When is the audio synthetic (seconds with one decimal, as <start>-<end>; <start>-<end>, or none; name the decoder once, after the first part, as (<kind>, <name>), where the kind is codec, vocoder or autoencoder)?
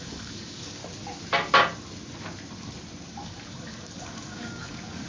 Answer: 0.0-0.8 (codec, DAC); 3.1-5.1